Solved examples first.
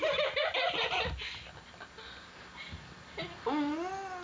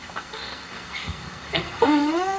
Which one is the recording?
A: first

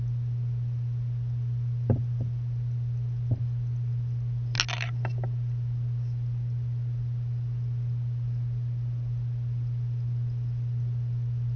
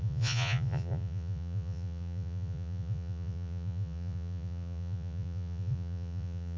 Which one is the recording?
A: first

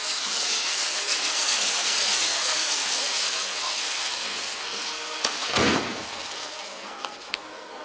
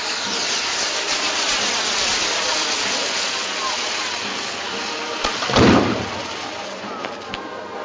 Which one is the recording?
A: second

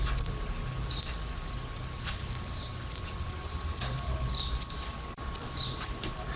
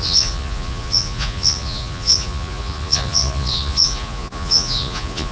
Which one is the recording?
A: first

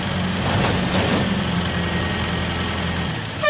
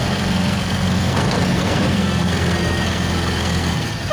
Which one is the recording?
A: first